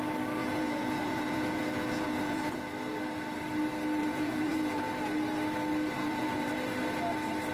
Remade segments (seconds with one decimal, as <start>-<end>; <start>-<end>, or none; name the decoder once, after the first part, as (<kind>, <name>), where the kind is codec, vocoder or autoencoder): 0.4-2.7 (vocoder, Vocos); 4.0-4.9; 6.0-6.5